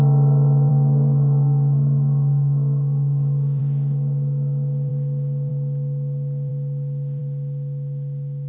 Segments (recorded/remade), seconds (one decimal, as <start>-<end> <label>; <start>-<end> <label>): 0.0-0.7 recorded; 0.7-3.6 remade; 3.6-8.5 recorded